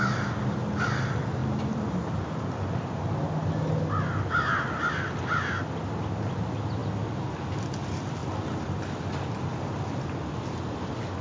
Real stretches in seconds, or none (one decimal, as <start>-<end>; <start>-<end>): 0.0-11.2